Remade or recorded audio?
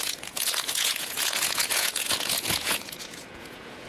remade